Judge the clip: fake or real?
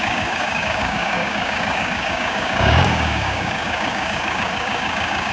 fake